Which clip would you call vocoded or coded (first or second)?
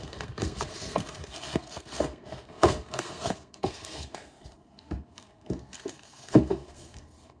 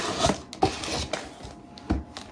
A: first